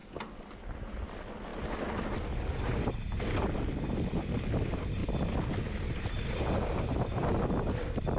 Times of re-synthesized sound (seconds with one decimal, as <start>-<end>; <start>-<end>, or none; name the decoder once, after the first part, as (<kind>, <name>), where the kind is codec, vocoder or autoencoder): 1.5-2.9 (vocoder, BigVGAN v2)